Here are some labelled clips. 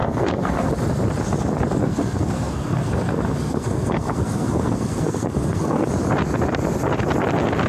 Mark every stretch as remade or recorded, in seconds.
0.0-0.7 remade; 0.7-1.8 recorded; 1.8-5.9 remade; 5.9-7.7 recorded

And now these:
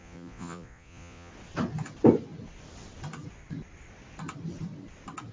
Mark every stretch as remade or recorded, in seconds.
0.0-1.3 remade; 1.3-5.3 recorded

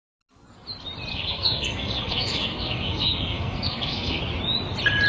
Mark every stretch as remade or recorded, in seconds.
0.0-1.1 recorded; 1.1-4.2 remade; 4.2-5.1 recorded

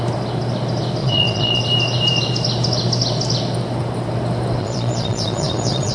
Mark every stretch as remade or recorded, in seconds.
0.0-1.0 recorded; 1.0-1.6 remade; 1.6-4.6 recorded; 4.6-5.9 remade

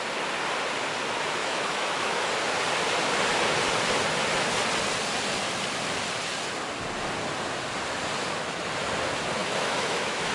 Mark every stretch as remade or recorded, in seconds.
0.0-1.4 recorded; 1.4-2.3 remade; 2.3-9.4 recorded; 9.4-10.3 remade

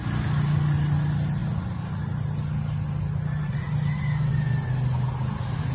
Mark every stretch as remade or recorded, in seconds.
0.0-5.7 recorded

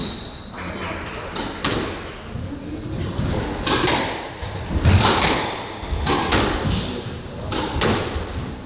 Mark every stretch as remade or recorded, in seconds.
0.0-8.7 recorded

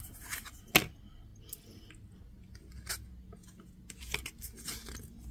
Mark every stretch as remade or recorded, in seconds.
0.0-5.3 recorded